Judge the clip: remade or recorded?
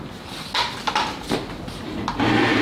recorded